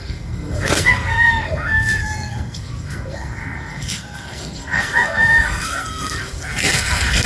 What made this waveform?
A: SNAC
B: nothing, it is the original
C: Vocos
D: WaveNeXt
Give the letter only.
A